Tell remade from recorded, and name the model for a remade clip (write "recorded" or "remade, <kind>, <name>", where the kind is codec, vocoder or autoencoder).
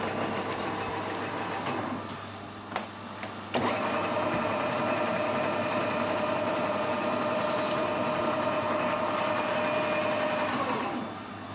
recorded